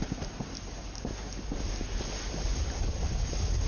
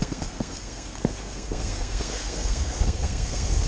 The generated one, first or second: second